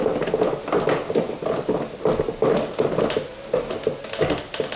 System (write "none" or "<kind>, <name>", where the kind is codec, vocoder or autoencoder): none